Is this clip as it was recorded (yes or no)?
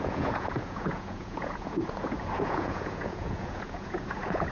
no